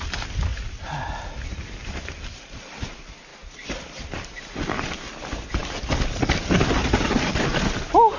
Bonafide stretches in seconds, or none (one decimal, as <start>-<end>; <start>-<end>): 0.0-8.2